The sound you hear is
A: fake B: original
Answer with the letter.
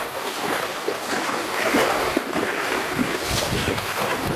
A